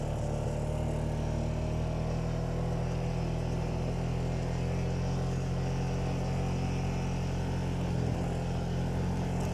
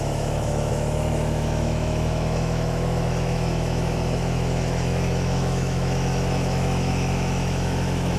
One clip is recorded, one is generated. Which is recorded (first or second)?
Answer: first